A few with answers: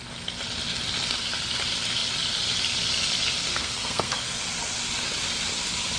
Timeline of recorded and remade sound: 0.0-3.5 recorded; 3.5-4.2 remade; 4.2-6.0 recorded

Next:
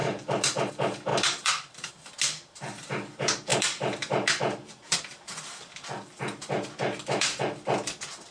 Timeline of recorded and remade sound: 0.0-0.7 remade; 0.7-1.1 recorded; 1.1-1.9 remade; 1.9-3.5 recorded; 3.5-7.4 remade; 7.4-8.3 recorded

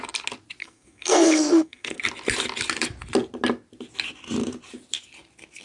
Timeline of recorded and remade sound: 0.0-0.6 recorded; 0.6-2.0 remade; 2.0-5.6 recorded